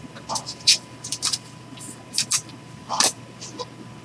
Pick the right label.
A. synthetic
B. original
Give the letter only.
B